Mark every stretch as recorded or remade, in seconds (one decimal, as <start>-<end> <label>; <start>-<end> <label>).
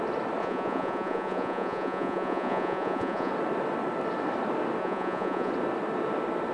0.0-0.4 recorded; 0.4-3.3 remade; 3.3-4.8 recorded; 4.8-5.5 remade; 5.5-6.5 recorded